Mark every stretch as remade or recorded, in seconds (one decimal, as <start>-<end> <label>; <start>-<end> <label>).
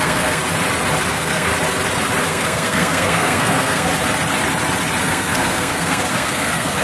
0.0-0.4 remade; 0.4-1.1 recorded; 1.1-1.5 remade; 1.5-2.2 recorded; 2.2-3.9 remade; 3.9-5.0 recorded; 5.0-6.8 remade